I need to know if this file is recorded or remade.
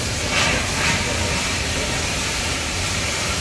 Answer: remade